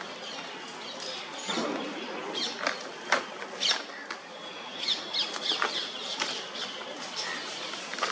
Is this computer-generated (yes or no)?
no